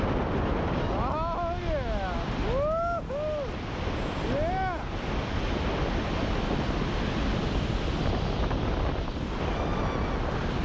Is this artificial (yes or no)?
no